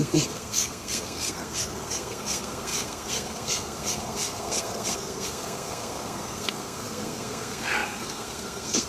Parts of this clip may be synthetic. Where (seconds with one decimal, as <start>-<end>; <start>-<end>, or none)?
0.0-8.9